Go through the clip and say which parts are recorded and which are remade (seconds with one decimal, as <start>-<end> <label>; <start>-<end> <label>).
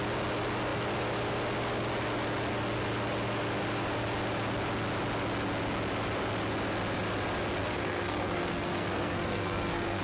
0.0-7.6 recorded; 7.6-10.0 remade